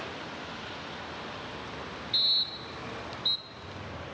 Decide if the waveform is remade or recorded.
recorded